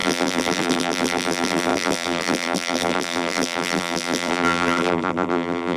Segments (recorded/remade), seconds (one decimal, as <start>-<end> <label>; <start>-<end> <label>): 0.0-5.8 remade

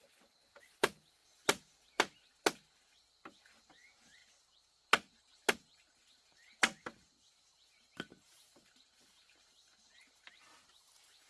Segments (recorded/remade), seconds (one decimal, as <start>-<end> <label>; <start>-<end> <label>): 0.0-11.3 recorded